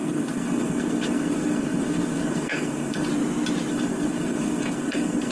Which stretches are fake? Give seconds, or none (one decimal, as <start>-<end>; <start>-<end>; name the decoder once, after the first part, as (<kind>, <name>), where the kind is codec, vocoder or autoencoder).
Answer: 0.0-3.1 (codec, SNAC); 3.7-5.3